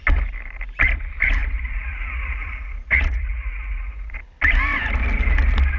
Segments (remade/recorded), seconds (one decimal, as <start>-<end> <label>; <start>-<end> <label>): 0.0-1.4 recorded; 1.4-4.2 remade; 4.2-5.8 recorded